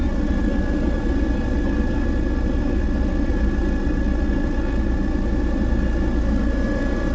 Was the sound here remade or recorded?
recorded